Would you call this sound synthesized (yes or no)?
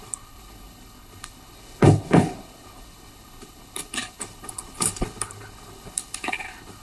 yes